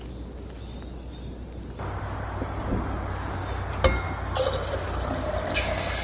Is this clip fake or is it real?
real